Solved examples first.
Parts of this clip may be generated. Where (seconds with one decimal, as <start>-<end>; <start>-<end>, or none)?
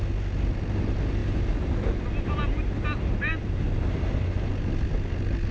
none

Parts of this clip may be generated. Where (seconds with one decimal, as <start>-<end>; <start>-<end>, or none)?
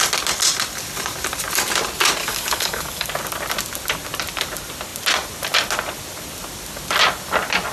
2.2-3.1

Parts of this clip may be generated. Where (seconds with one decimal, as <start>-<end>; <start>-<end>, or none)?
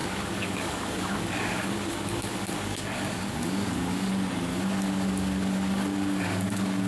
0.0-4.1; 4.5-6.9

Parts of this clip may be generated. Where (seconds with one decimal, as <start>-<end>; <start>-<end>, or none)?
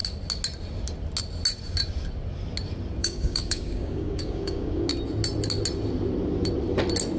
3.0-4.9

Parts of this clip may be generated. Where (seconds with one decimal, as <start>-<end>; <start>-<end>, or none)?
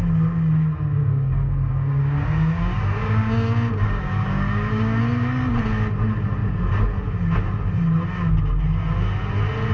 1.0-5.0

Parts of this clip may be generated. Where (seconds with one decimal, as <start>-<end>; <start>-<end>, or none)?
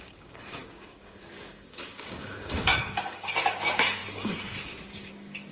0.0-5.5